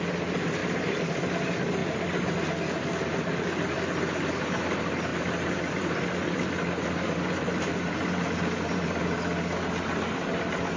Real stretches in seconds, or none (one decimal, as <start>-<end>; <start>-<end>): 0.0-0.6; 1.1-1.8; 2.3-5.1; 9.0-10.8